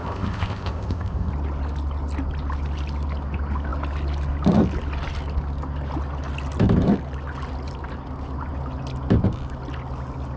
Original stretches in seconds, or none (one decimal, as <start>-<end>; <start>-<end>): 1.3-10.4